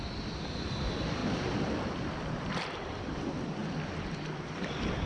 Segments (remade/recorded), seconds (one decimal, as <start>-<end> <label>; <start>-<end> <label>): 0.0-5.1 remade